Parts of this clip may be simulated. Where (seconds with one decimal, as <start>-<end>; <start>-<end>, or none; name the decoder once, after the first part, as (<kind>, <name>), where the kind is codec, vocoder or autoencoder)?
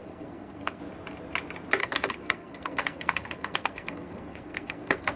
0.0-0.8 (codec, SNAC); 1.8-5.2